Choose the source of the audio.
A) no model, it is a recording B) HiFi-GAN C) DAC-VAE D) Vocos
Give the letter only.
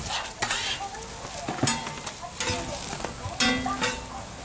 A